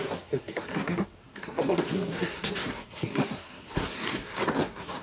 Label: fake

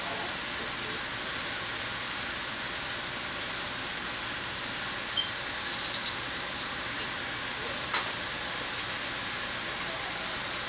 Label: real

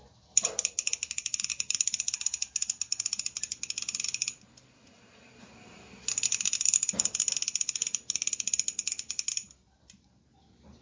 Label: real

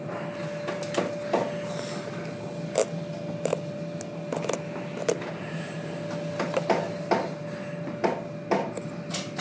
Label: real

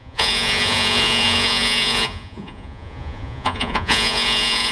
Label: fake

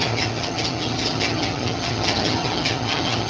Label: fake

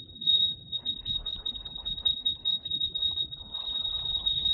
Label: fake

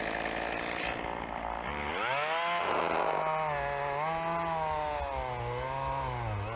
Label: real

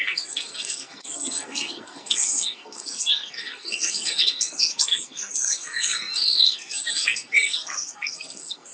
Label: fake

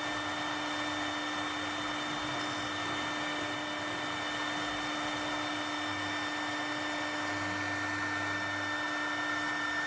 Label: real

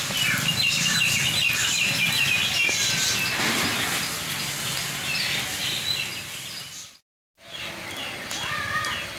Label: real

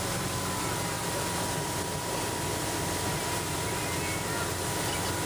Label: real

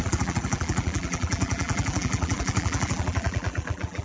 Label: fake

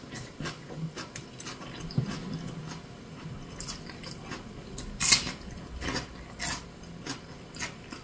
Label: real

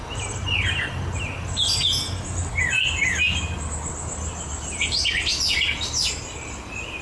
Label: real